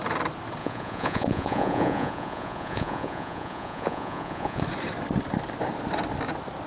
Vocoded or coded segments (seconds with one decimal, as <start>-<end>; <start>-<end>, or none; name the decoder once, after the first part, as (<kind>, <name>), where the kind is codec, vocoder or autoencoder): 0.6-4.6 (vocoder, Vocos)